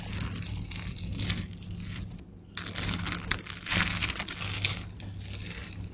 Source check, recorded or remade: recorded